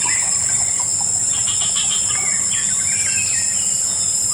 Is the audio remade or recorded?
remade